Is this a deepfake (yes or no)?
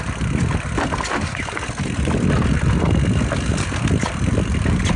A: no